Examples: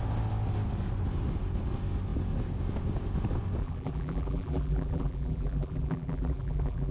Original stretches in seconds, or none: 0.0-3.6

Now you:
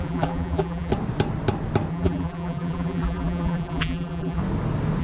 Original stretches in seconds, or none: 0.9-1.9; 4.4-5.0